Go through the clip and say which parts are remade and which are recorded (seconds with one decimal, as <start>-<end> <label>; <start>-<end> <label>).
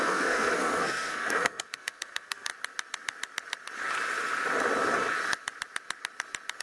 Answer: 0.0-2.5 remade; 2.5-6.6 recorded